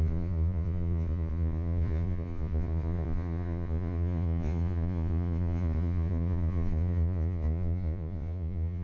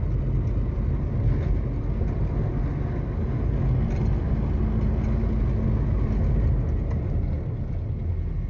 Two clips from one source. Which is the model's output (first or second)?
first